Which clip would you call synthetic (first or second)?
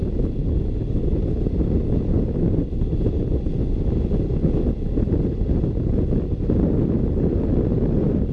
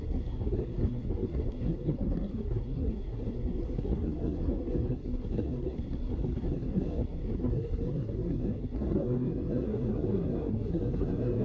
second